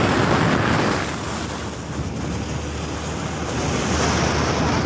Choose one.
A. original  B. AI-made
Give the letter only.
A